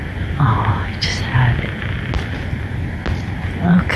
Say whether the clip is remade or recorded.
recorded